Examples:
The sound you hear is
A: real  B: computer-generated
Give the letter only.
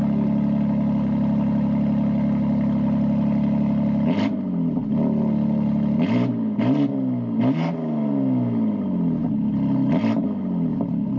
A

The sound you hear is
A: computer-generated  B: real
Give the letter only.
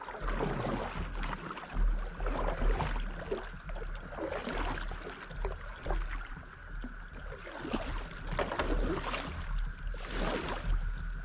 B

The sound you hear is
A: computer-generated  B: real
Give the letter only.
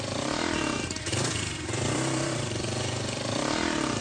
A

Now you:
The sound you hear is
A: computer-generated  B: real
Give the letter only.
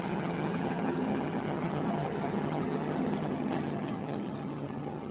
A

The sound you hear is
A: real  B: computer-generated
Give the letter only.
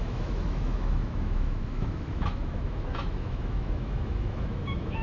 B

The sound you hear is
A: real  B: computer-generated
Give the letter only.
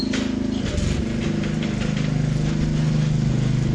A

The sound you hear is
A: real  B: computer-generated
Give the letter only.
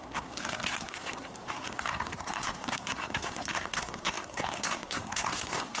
B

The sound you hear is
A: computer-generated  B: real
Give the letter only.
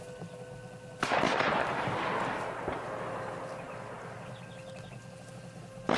B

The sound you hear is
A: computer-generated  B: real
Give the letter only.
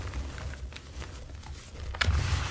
B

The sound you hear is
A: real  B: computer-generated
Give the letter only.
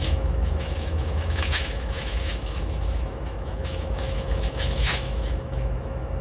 B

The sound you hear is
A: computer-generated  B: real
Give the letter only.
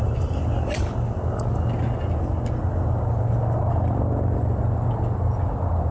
B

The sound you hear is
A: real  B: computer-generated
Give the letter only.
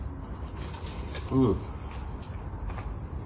B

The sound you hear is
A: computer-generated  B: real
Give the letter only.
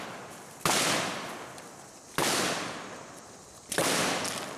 B